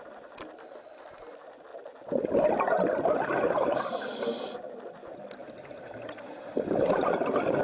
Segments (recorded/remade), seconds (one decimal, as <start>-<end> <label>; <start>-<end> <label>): 0.0-7.6 recorded